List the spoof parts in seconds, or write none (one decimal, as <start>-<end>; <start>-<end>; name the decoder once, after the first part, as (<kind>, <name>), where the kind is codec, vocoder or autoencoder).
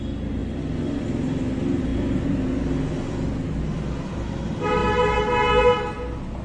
none